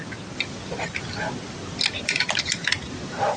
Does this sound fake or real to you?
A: real